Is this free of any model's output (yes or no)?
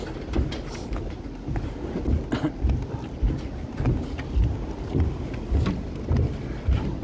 yes